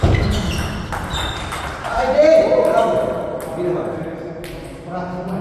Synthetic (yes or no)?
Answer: no